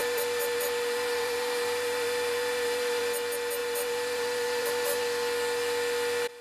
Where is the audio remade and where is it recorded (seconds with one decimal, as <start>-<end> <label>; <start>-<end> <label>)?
0.0-3.0 remade; 3.0-3.6 recorded; 3.6-5.0 remade; 5.0-6.4 recorded

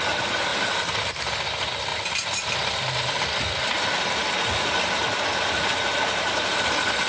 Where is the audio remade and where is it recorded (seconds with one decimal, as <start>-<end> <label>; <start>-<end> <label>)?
0.0-0.5 recorded; 0.5-1.2 remade; 1.2-7.1 recorded

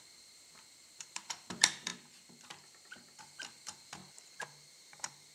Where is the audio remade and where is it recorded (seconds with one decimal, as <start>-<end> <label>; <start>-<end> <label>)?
0.0-4.0 remade; 4.0-4.7 recorded; 4.7-5.3 remade

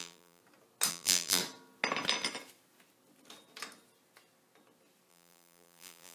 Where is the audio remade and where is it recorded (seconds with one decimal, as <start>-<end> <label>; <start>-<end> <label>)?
0.0-0.4 remade; 0.4-0.9 recorded; 0.9-1.4 remade; 1.4-5.1 recorded; 5.1-6.1 remade

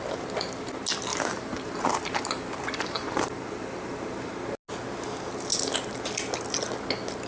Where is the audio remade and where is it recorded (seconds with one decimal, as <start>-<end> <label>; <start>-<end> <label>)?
0.0-1.1 recorded; 1.1-4.3 remade; 4.3-7.3 recorded

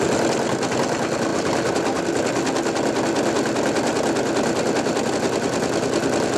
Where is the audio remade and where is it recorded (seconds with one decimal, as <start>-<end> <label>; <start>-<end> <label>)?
0.0-6.4 recorded